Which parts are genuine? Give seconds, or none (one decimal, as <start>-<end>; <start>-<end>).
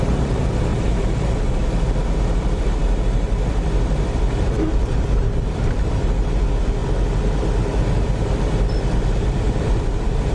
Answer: 0.7-2.2; 6.8-9.7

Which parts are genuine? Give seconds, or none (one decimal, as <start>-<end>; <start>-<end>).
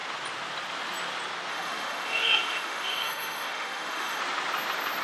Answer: 0.0-1.5; 4.2-5.0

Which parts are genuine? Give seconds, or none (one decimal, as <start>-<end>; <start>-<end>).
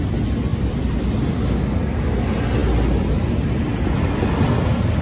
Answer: 0.0-0.5; 1.0-5.0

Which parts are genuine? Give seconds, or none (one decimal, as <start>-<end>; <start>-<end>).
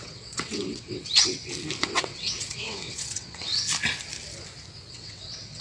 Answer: 1.0-1.8; 3.5-4.9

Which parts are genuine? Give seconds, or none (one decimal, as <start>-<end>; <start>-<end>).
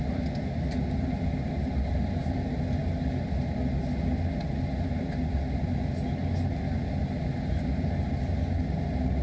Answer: 0.0-9.2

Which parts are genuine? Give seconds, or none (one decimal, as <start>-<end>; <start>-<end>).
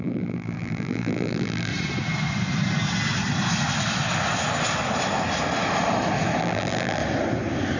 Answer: 1.7-6.4; 7.0-7.8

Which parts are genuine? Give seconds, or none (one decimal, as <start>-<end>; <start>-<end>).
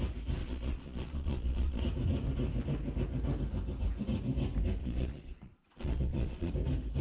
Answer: 0.0-0.4; 1.8-4.8; 6.5-7.0